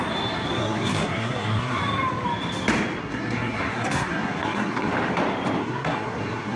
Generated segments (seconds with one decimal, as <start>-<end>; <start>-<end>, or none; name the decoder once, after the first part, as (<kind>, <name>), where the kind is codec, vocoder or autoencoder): 0.6-1.8 (codec, SNAC); 3.0-4.9; 5.6-6.6